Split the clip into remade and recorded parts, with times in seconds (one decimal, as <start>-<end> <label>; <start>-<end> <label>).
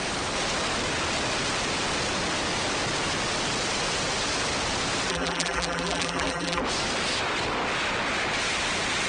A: 0.0-5.1 recorded; 5.1-6.6 remade; 6.6-9.1 recorded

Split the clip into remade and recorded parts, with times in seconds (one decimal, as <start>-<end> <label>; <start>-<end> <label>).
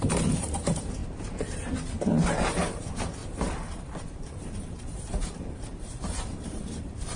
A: 0.0-1.0 remade; 1.0-2.5 recorded; 2.5-7.2 remade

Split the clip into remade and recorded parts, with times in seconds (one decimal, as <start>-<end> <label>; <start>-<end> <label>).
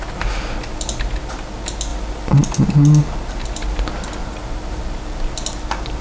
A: 0.0-4.2 recorded; 4.2-4.8 remade; 4.8-6.0 recorded